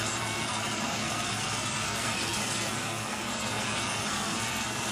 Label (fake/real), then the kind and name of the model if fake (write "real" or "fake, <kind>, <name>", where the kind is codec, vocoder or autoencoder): fake, codec, SNAC